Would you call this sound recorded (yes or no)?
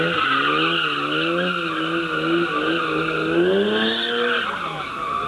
yes